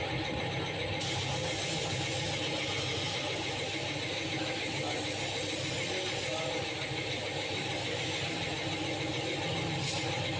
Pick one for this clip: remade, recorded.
recorded